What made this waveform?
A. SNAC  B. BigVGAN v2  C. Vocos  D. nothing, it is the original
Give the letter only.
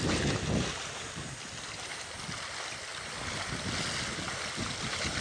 D